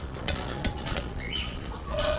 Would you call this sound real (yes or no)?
no